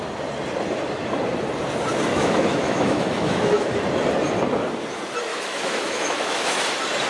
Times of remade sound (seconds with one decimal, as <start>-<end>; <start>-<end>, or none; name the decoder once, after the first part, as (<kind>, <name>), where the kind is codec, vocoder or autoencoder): 2.1-3.7 (autoencoder, DAC-VAE); 5.3-6.6